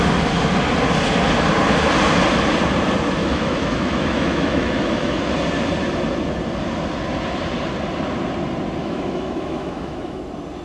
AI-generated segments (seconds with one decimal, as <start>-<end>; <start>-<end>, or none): 3.2-5.3; 8.8-10.2